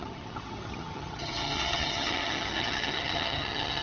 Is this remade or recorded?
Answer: remade